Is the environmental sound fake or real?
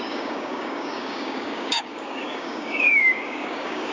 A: fake